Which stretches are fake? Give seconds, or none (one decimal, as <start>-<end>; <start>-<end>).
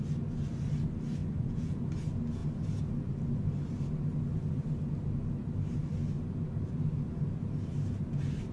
1.2-1.8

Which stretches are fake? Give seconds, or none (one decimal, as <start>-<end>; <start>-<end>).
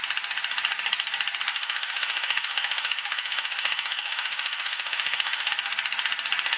1.5-5.5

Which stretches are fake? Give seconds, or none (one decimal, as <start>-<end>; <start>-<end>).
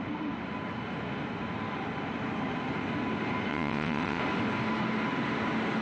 3.5-4.2